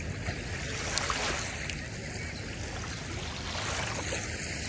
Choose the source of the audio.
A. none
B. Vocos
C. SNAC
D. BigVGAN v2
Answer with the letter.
A